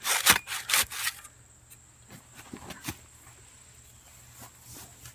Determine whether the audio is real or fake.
real